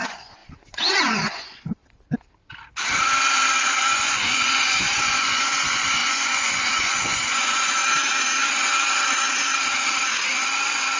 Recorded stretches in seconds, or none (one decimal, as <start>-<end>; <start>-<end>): 1.8-3.9; 7.8-11.0